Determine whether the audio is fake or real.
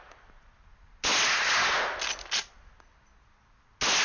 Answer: real